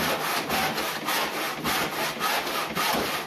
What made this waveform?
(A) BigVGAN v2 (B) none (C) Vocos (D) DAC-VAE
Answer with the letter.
B